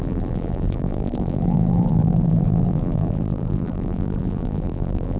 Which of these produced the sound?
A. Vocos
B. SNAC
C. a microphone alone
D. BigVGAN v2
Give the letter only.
D